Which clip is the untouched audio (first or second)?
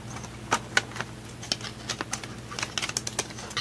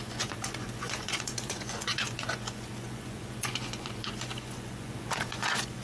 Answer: first